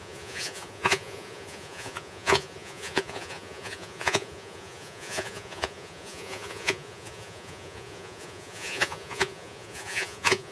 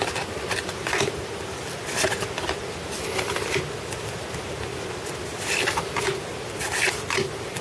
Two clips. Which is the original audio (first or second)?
second